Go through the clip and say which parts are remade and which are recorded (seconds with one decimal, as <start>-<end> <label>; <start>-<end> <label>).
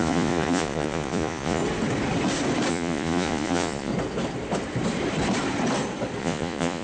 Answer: 0.0-1.6 remade; 1.6-2.7 recorded; 2.7-3.9 remade; 3.9-6.2 recorded; 6.2-6.8 remade